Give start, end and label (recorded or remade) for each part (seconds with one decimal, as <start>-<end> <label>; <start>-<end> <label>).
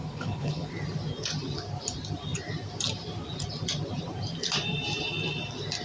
0.0-0.7 remade; 0.7-5.8 recorded